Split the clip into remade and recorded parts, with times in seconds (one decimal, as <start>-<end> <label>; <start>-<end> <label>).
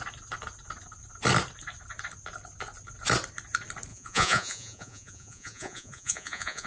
0.0-3.9 recorded; 3.9-6.7 remade